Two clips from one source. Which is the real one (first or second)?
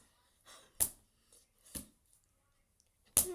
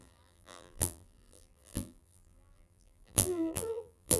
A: first